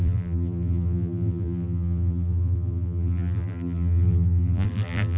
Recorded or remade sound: remade